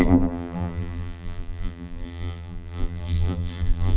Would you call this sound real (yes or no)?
no